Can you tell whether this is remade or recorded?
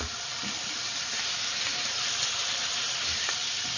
recorded